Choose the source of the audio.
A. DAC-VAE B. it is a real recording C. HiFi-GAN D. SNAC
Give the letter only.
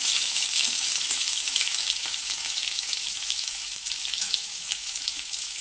A